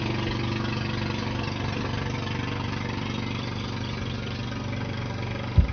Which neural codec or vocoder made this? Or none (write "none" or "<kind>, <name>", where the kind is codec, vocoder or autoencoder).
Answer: none